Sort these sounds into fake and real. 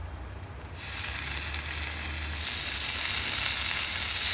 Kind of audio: real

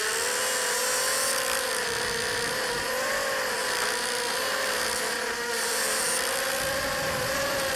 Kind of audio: real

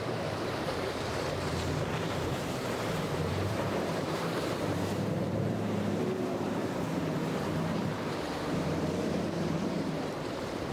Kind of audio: fake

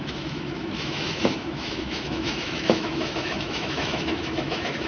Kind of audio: fake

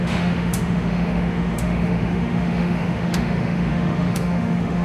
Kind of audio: fake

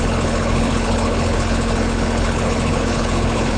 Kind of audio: fake